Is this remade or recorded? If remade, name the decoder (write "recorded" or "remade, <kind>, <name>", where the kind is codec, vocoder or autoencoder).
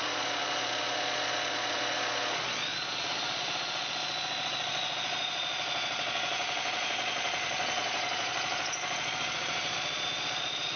remade, vocoder, Vocos